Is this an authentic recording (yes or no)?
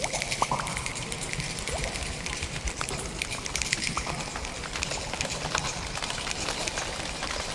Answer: yes